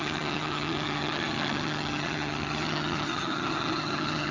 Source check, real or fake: fake